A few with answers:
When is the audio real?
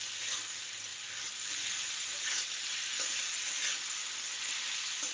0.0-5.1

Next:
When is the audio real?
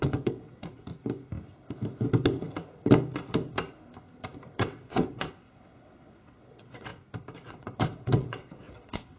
0.9-4.5; 6.9-7.4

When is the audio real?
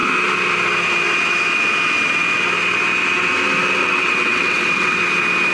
0.0-3.8; 5.0-5.5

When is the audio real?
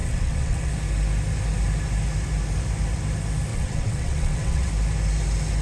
0.7-3.5; 4.7-5.6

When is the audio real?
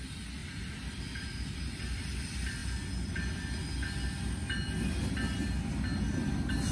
0.0-6.7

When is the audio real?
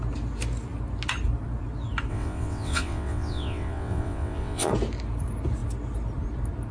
0.0-2.1; 4.7-6.7